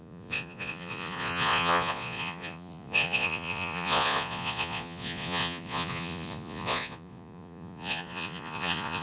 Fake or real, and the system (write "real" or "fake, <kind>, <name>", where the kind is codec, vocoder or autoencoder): fake, vocoder, Vocos